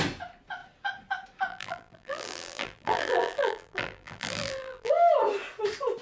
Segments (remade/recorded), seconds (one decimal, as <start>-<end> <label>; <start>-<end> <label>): 0.0-1.5 recorded; 1.5-4.9 remade; 4.9-6.0 recorded